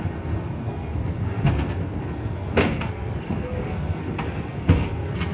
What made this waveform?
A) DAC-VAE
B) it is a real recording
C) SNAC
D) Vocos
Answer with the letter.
C